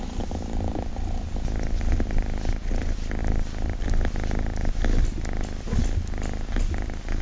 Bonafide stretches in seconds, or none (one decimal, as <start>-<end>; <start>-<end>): 0.0-3.2; 3.9-7.2